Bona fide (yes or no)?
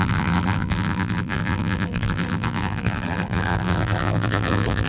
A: no